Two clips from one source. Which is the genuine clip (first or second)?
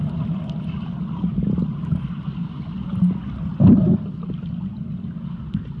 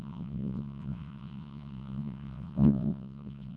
first